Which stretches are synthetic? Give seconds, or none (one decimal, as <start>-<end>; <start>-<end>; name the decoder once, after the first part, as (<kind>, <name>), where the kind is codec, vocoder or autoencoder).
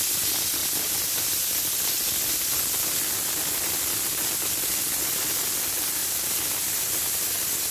none